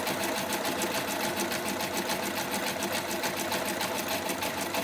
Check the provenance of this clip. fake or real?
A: real